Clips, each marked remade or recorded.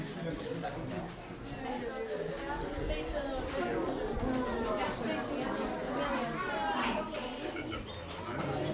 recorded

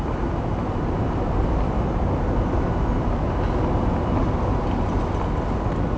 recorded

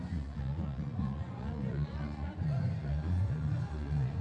remade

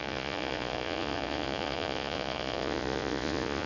remade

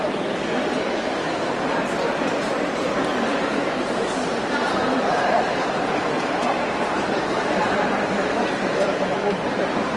remade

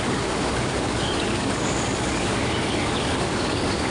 remade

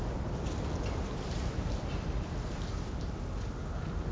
remade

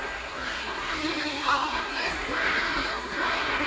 remade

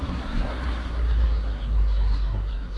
remade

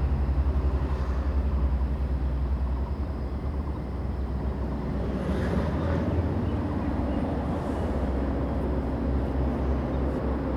recorded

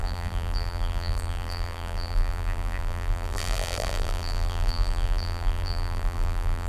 remade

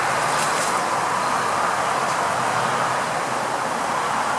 recorded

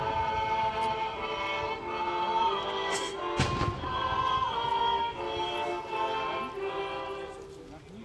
recorded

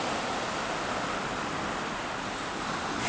recorded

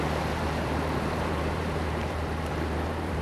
remade